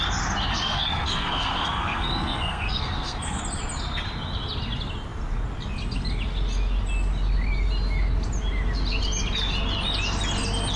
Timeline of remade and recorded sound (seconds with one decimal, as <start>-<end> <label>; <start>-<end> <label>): 0.0-0.5 recorded; 0.5-3.4 remade; 3.4-10.8 recorded